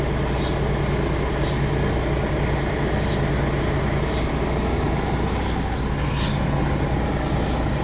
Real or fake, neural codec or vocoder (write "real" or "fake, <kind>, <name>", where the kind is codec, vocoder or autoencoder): real